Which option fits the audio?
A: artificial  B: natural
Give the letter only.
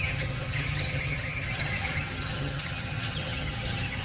A